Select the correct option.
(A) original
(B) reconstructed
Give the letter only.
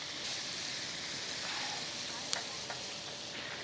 A